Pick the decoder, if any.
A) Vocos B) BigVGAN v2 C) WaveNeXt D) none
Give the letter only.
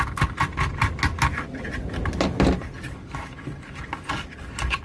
D